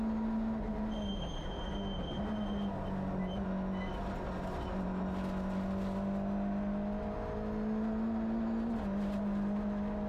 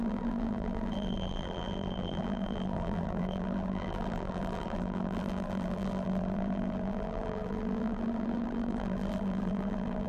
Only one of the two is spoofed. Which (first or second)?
second